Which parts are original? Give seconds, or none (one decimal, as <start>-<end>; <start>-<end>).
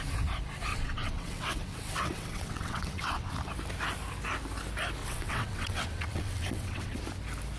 0.0-0.7; 3.3-5.0; 7.0-7.6